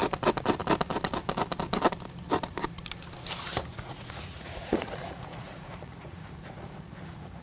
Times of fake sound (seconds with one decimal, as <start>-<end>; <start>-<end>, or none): 3.7-7.4